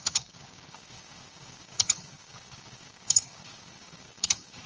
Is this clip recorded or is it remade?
remade